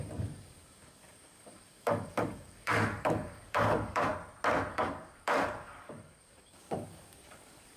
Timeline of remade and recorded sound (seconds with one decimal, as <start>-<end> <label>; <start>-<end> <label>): 0.0-4.1 remade; 4.1-4.7 recorded; 4.7-7.8 remade